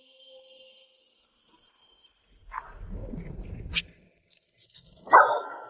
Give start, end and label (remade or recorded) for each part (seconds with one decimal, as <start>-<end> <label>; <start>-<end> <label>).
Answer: 0.0-5.7 recorded